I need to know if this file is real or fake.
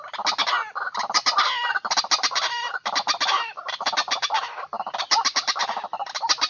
real